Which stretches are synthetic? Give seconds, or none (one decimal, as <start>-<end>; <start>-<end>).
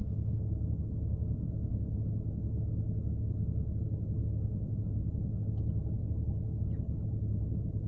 0.0-0.8